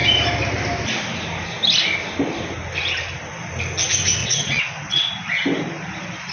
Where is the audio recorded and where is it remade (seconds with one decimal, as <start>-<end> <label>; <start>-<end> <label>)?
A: 0.0-4.2 recorded; 4.2-5.1 remade; 5.1-6.3 recorded